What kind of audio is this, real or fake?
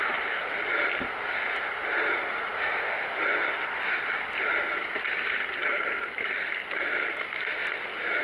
real